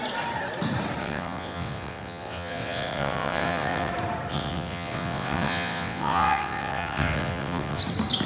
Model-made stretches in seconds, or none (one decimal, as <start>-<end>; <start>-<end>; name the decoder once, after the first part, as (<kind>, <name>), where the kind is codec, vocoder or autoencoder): 1.0-3.9 (vocoder, WaveNeXt); 4.3-7.8